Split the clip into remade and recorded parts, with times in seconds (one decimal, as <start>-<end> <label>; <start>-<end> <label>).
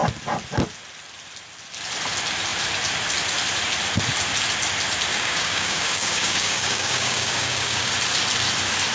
0.0-5.1 recorded; 5.1-7.9 remade; 7.9-8.9 recorded